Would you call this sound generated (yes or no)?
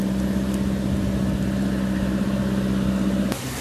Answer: no